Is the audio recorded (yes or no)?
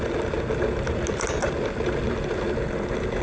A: yes